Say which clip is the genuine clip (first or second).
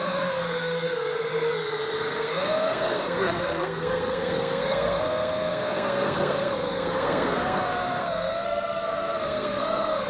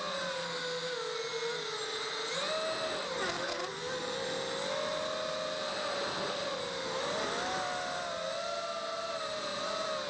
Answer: second